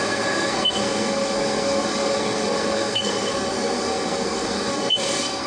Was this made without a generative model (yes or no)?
no